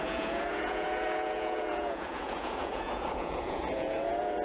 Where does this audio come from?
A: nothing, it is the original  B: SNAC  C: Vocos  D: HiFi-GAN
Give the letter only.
C